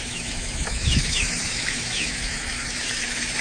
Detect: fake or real fake